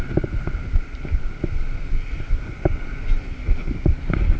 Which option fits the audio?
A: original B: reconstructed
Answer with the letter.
A